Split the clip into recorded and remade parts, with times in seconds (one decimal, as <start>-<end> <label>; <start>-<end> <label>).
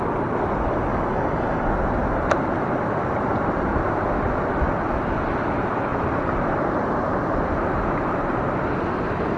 0.0-0.9 recorded; 0.9-1.7 remade; 1.7-9.4 recorded